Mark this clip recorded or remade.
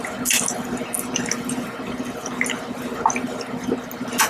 recorded